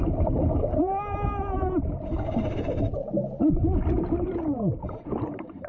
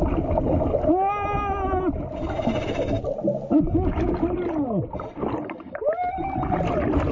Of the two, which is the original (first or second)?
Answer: second